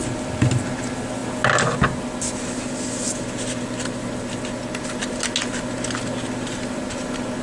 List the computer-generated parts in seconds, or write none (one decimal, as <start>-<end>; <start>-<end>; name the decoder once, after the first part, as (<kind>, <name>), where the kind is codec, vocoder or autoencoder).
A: none